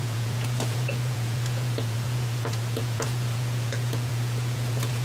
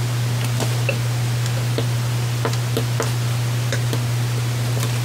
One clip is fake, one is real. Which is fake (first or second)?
first